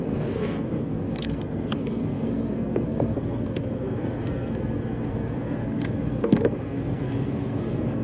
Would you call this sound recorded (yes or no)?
no